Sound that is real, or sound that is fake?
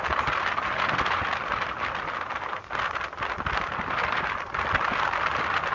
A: real